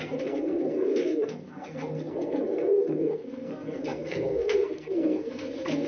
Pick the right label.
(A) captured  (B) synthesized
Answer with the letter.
B